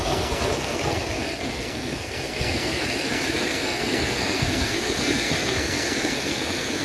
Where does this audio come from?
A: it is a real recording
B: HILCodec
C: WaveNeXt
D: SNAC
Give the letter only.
D